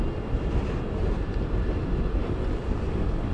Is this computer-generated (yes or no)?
no